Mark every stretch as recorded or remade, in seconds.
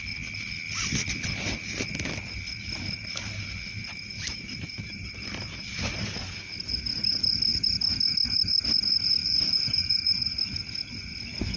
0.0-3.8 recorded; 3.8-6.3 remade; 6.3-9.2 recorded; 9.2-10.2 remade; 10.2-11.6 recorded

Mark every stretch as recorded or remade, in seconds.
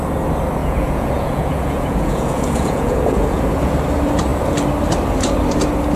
0.0-0.6 recorded; 0.6-3.7 remade; 3.7-6.0 recorded